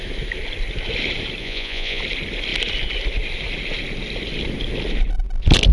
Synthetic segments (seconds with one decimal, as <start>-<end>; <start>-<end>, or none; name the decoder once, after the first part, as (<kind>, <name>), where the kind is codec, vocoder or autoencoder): 1.4-2.0 (vocoder, Vocos)